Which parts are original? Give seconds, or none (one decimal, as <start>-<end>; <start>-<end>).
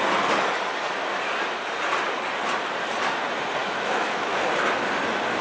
0.0-3.6; 4.4-5.4